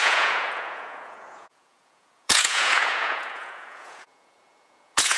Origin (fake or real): fake